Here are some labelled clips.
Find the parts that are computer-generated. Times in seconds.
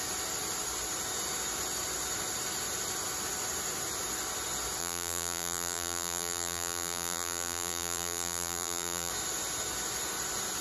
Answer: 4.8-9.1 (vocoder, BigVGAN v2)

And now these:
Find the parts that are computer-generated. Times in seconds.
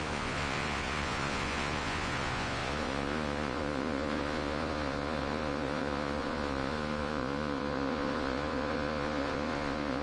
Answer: 0.0-10.0 (vocoder, Vocos)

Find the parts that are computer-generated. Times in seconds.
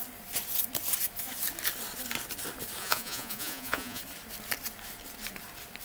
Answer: 2.8-4.0 (vocoder, Vocos)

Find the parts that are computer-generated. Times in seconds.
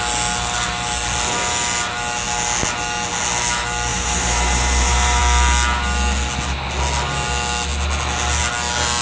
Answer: 3.9-5.2 (vocoder, BigVGAN v2)